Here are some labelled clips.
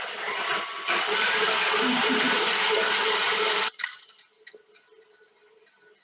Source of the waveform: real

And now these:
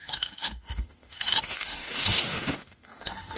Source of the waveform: fake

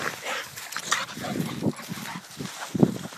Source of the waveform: real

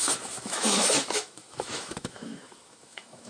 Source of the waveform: fake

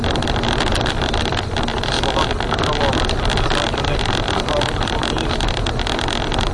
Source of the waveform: real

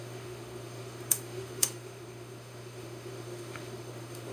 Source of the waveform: fake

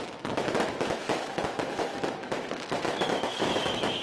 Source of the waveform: fake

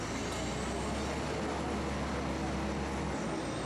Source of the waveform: real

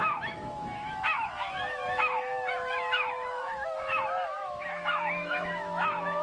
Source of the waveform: fake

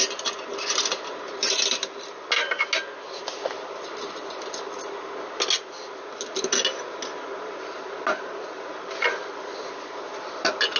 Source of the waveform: real